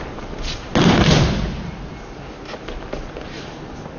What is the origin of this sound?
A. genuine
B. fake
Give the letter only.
A